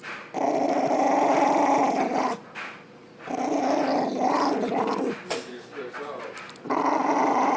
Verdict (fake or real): real